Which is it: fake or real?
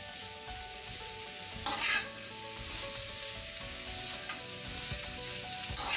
real